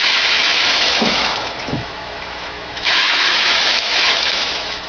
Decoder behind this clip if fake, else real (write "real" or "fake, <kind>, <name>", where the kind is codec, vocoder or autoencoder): fake, autoencoder, DAC-VAE